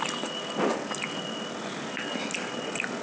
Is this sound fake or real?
real